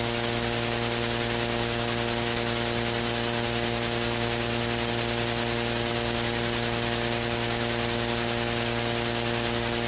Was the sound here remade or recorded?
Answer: recorded